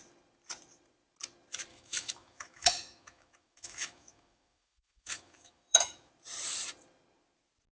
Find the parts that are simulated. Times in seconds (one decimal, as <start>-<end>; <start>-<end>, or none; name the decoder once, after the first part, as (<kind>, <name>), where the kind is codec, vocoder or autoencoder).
1.7-6.1 (autoencoder, DAC-VAE)